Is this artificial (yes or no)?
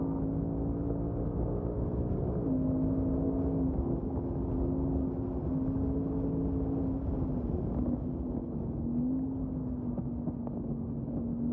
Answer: no